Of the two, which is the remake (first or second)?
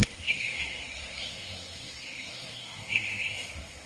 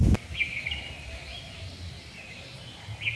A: first